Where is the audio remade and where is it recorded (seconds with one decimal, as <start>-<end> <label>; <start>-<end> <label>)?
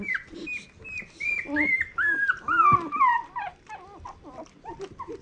0.0-5.2 recorded